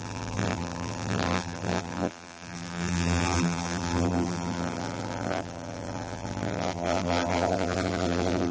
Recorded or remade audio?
remade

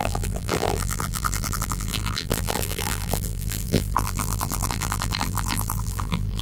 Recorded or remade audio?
remade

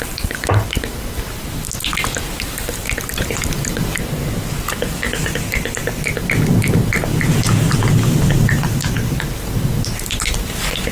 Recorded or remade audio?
recorded